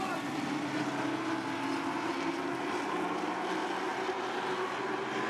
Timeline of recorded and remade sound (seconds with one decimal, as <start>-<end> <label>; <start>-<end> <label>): 0.0-5.3 recorded